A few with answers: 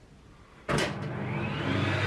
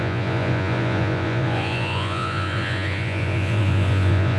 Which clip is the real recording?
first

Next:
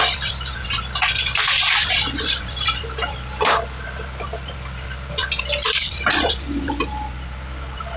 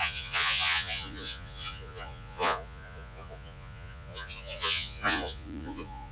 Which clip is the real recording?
first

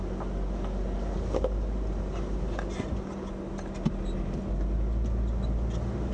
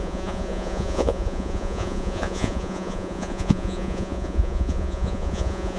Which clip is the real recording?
first